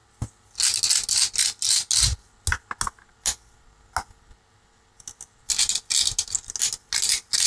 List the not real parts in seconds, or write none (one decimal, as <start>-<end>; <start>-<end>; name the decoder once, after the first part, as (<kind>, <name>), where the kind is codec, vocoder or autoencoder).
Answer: none